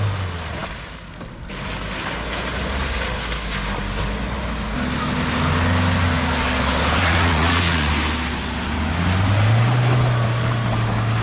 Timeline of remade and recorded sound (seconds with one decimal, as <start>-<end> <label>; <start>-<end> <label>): 0.0-7.0 recorded; 7.0-7.9 remade; 7.9-11.2 recorded